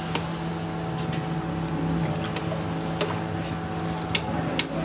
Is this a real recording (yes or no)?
yes